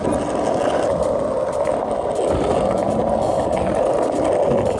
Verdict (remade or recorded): recorded